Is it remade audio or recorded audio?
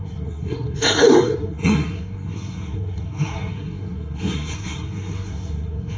remade